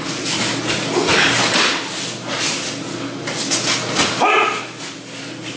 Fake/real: real